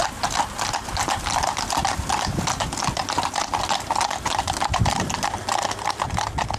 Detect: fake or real real